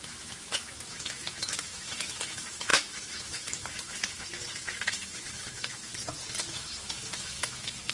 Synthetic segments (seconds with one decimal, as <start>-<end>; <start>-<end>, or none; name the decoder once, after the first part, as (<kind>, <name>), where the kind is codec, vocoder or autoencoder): 0.0-5.9 (autoencoder, DAC-VAE); 6.5-7.9

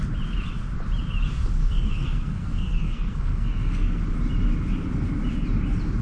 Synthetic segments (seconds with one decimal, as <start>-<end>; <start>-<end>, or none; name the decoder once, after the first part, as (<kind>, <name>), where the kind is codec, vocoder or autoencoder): 1.6-4.0 (codec, SNAC)

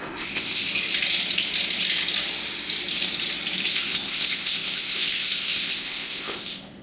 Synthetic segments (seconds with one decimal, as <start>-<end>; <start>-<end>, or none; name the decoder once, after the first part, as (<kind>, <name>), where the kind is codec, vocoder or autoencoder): 0.0-0.7 (codec, ZipCodec); 3.7-6.8

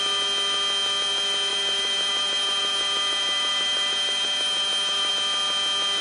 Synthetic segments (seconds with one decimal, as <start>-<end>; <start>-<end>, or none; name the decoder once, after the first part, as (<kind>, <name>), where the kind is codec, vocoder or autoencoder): 1.5-5.1 (vocoder, BigVGAN v2)

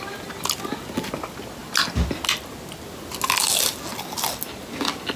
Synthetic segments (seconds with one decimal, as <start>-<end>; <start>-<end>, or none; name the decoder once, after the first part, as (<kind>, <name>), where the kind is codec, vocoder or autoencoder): none

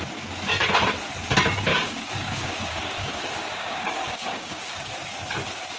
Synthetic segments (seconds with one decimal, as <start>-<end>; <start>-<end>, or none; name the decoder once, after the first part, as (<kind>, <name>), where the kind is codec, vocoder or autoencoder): 1.7-4.9 (codec, DAC)